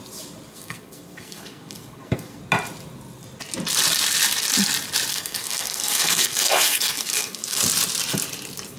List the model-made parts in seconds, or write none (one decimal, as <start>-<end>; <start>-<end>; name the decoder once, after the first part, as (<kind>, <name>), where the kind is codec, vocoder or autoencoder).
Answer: 0.5-2.4 (codec, SNAC); 5.1-7.6